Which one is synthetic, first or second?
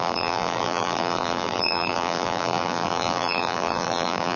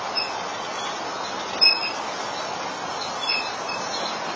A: first